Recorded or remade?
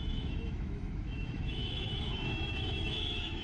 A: remade